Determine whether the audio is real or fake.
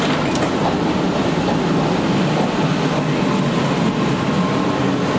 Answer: real